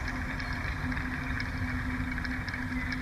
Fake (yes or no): no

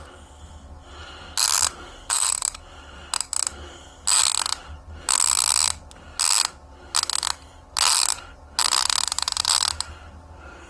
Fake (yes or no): no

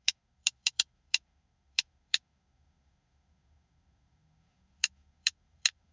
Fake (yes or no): yes